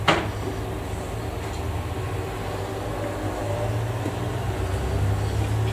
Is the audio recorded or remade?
recorded